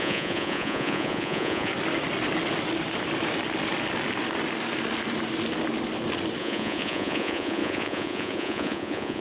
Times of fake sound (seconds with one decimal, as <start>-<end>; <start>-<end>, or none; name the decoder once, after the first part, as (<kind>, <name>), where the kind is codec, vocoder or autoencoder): 0.0-1.7 (vocoder, Vocos); 6.4-9.2